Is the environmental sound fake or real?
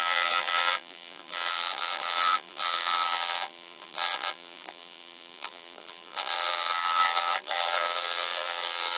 fake